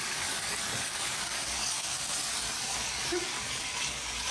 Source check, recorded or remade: remade